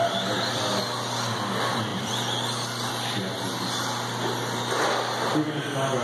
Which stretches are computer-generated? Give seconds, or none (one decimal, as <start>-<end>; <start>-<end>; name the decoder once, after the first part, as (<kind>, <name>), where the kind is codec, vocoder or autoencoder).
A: 1.9-2.9 (vocoder, BigVGAN v2)